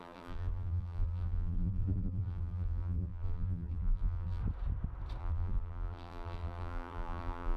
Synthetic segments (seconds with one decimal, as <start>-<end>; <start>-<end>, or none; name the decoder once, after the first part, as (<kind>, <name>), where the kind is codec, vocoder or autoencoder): 0.0-4.4 (vocoder, BigVGAN v2); 5.2-7.6